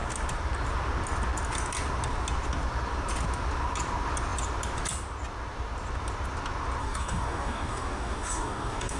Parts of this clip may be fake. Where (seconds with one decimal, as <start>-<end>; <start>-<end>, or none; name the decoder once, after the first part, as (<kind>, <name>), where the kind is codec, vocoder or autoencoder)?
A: 6.8-9.0 (codec, DAC)